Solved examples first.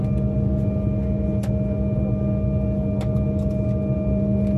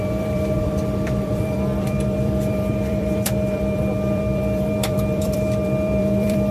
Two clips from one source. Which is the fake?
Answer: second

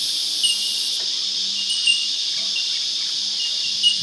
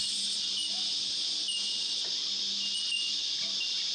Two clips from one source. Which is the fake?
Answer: first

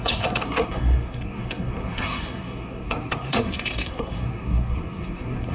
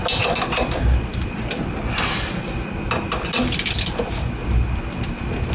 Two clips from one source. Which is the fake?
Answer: first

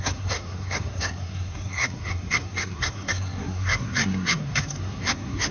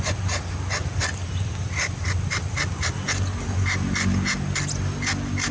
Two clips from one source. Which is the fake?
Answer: first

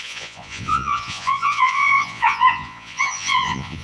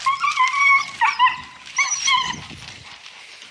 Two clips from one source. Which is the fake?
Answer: first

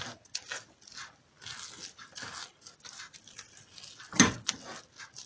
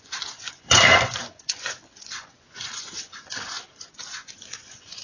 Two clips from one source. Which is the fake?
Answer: second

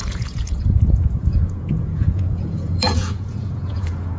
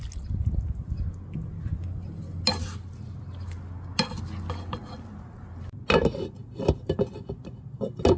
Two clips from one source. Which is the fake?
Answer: first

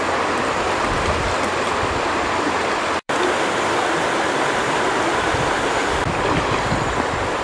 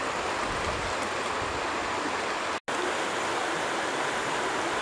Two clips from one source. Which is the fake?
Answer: first